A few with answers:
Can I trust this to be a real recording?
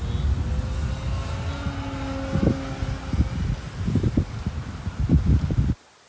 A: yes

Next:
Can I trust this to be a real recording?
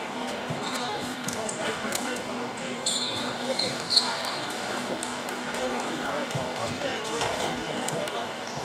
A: no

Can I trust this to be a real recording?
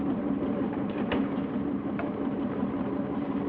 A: no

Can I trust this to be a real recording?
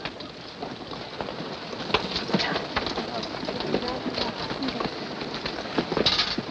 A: yes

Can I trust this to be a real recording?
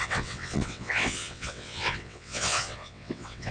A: no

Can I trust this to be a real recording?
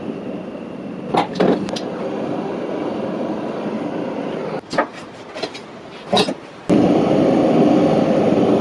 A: yes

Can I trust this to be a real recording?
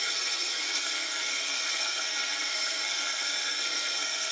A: no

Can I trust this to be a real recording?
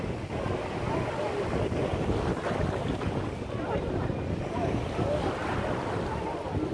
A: yes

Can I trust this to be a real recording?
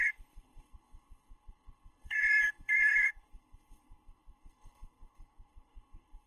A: no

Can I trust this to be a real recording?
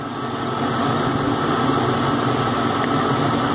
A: yes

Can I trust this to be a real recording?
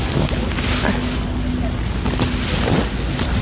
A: yes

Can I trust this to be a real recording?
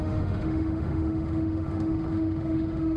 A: no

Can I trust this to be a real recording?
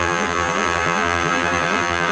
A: no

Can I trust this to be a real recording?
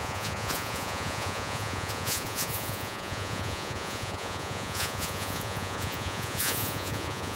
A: no